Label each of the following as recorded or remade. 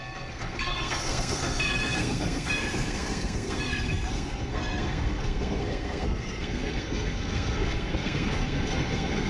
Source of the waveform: remade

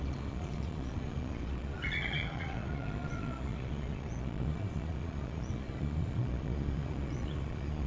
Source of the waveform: remade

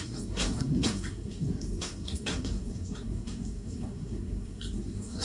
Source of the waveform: remade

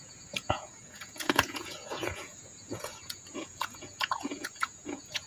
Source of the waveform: remade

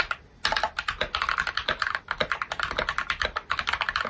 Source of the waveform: recorded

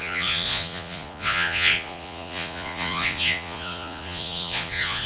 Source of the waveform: remade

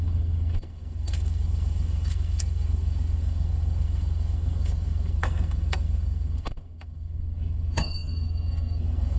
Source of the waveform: remade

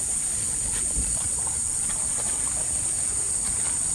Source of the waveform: recorded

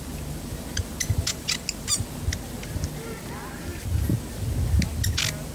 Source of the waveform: recorded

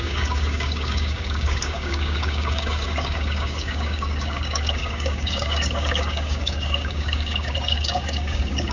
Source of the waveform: remade